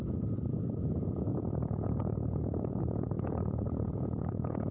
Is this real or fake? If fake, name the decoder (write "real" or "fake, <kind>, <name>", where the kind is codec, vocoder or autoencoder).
fake, vocoder, Vocos